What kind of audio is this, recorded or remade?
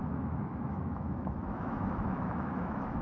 remade